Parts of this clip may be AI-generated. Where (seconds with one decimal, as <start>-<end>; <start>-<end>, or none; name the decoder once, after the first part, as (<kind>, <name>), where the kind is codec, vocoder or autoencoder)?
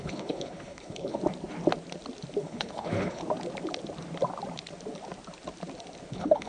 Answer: 0.0-1.2 (codec, HILCodec); 2.4-3.2; 6.1-6.5